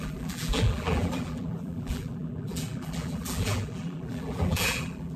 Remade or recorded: remade